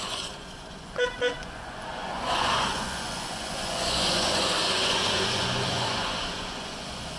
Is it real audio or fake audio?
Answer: fake